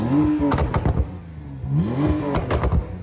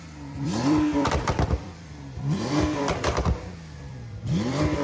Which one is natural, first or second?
first